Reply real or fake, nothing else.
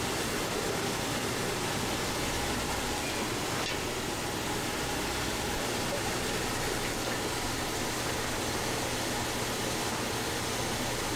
real